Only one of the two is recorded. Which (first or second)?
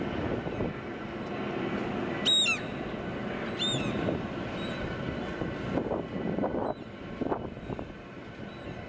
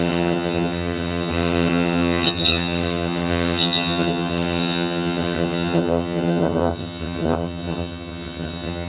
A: first